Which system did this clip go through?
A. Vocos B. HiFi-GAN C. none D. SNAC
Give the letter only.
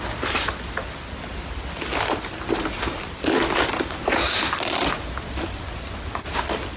C